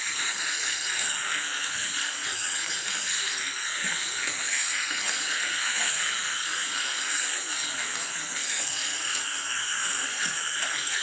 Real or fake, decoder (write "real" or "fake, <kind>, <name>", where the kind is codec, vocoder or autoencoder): fake, codec, SNAC